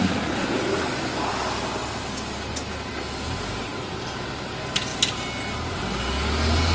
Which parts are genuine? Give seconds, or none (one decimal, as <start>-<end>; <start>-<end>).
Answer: 0.0-6.7